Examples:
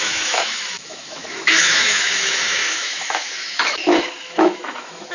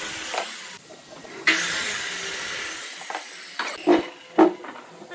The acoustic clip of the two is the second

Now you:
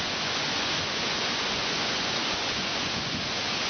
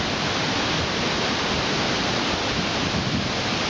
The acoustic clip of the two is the second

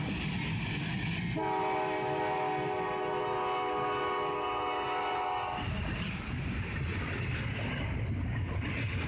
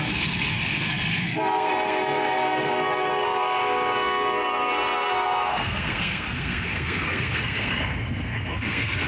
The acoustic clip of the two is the first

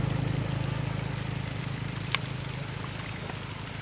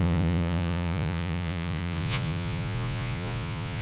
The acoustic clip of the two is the first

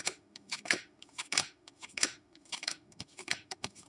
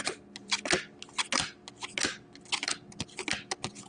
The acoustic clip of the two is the second